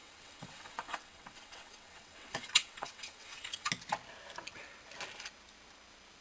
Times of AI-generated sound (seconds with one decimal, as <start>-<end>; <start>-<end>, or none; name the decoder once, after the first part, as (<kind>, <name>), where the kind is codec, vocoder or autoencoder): 0.0-3.7 (vocoder, WaveNeXt)